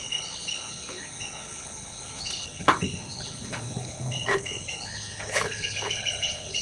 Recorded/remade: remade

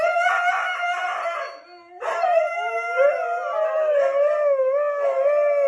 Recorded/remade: recorded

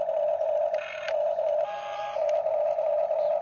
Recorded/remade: recorded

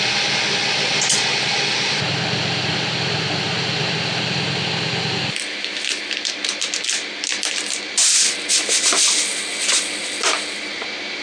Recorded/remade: recorded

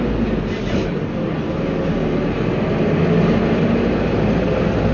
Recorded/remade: recorded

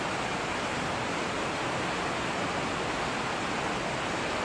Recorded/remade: recorded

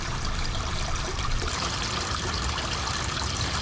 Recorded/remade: remade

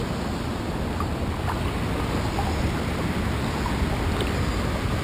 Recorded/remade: recorded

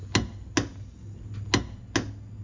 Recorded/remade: recorded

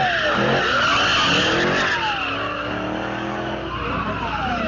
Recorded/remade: recorded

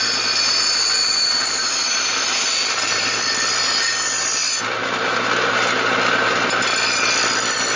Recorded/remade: recorded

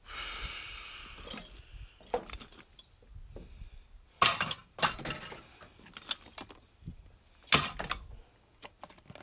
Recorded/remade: recorded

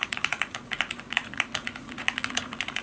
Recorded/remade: remade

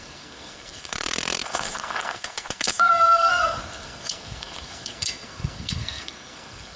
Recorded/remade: remade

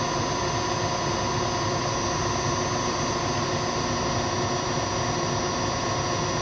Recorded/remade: recorded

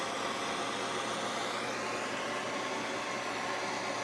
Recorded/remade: recorded